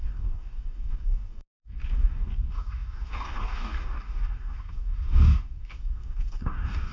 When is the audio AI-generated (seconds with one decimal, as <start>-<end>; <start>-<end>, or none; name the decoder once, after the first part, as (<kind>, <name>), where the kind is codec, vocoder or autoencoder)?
0.0-6.9 (codec, DAC)